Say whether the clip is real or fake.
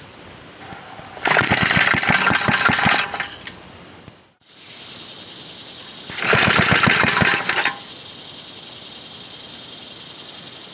real